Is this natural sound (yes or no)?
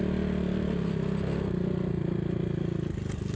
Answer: yes